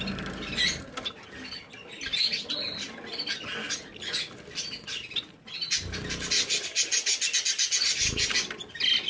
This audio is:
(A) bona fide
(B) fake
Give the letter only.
A